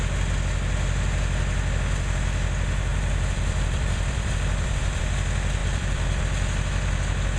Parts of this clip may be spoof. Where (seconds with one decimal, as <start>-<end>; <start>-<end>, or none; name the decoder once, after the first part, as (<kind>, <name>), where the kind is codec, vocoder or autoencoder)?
2.9-5.0 (vocoder, BigVGAN v2); 5.6-6.2